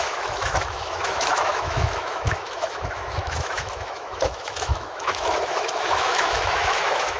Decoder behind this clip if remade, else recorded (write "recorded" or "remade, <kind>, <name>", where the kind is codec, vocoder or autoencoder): remade, autoencoder, DAC-VAE